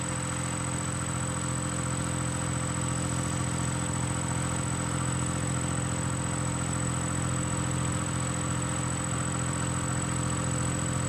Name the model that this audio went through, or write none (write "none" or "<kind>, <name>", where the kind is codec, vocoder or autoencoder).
vocoder, BigVGAN v2